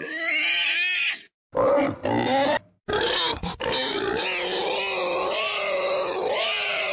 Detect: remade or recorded recorded